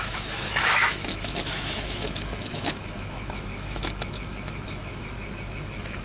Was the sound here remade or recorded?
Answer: remade